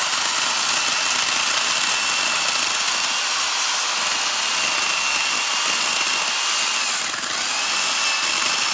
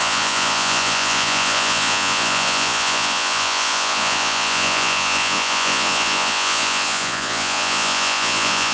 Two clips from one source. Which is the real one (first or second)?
first